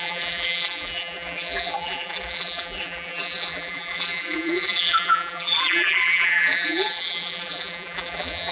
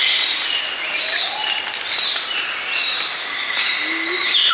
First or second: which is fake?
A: first